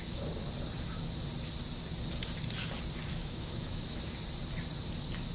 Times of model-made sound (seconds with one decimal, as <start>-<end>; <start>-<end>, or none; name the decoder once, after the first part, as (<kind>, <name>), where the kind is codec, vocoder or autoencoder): 3.1-4.0 (autoencoder, DAC-VAE)